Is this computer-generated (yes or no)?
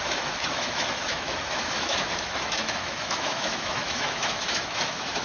yes